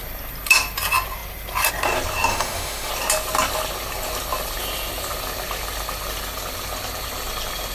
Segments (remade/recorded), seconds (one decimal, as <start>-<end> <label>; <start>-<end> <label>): 0.0-2.3 recorded; 2.3-2.9 remade; 2.9-7.7 recorded